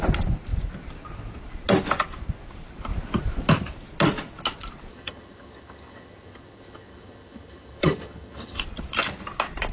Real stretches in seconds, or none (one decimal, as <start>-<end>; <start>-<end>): 0.0-4.9; 8.6-9.7